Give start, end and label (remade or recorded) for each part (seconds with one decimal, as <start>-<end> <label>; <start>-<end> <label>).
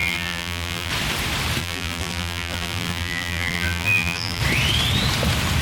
0.0-0.9 remade; 0.9-1.6 recorded; 1.6-4.4 remade; 4.4-5.6 recorded